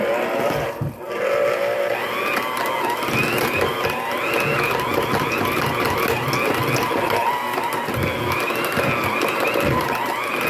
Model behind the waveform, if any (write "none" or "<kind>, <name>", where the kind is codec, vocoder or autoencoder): none